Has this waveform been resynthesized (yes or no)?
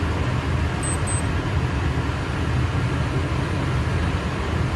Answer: no